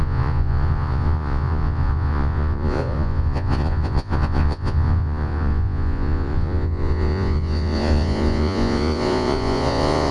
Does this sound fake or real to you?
fake